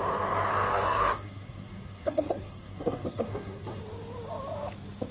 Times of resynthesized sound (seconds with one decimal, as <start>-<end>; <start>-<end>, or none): 0.7-3.8